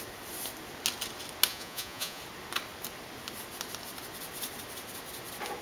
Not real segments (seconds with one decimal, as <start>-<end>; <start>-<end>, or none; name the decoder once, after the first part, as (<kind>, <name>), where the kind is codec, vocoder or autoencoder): 1.5-2.2 (vocoder, Vocos)